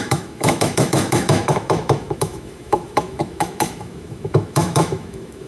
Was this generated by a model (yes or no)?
yes